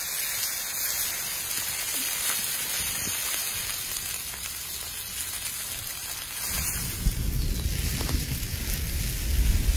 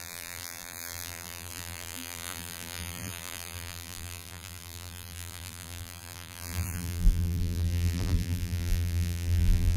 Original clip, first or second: first